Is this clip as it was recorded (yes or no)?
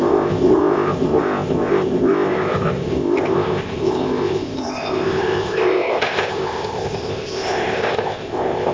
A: no